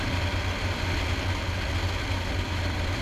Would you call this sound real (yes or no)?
yes